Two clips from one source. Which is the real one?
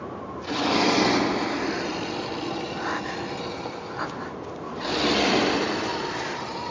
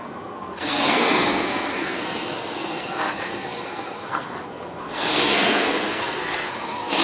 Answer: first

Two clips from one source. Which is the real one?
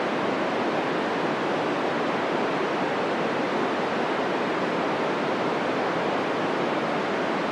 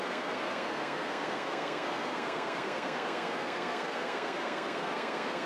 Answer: first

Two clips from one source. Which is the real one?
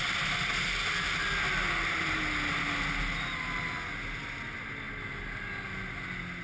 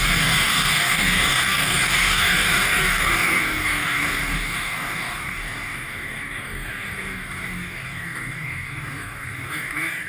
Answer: first